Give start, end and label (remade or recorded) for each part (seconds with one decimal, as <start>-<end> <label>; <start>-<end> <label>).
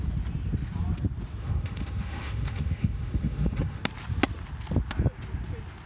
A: 0.0-1.4 recorded; 1.4-3.8 remade; 3.8-5.9 recorded